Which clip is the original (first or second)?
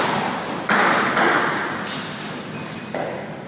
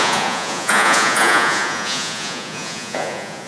first